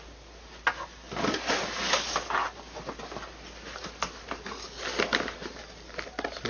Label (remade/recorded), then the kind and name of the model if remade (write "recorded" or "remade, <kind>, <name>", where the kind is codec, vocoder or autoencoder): recorded